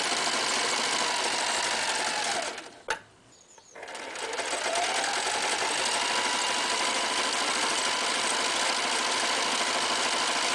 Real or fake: real